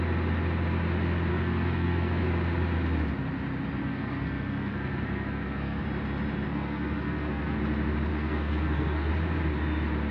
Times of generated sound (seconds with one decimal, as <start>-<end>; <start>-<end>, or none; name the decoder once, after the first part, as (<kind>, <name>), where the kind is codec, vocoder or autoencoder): 1.3-2.2 (codec, SNAC); 3.8-5.8; 6.5-7.6; 8.1-9.1